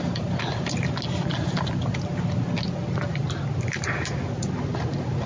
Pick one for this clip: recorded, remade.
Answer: recorded